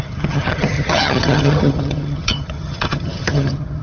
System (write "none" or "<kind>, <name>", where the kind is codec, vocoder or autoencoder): vocoder, HiFi-GAN